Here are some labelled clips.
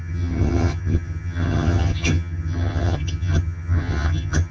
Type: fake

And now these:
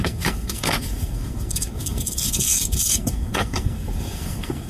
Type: fake